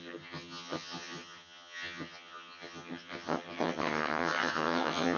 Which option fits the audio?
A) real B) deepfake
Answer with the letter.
B